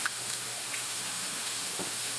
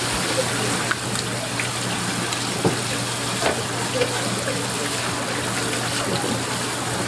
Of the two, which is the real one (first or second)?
second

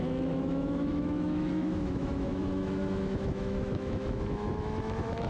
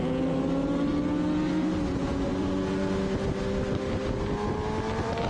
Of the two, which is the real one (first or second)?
second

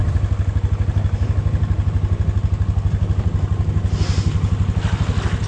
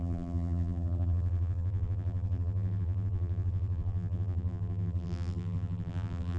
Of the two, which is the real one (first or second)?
first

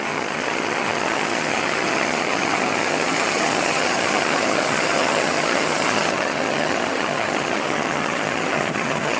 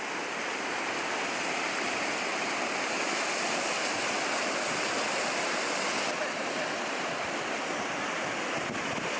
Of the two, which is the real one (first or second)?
second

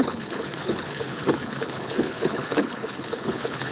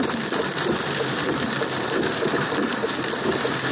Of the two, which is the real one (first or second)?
second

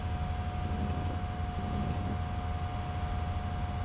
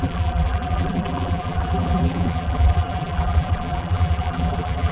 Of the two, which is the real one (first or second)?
first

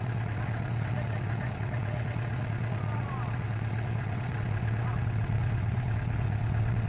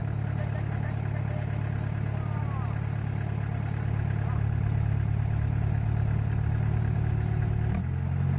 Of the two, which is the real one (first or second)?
second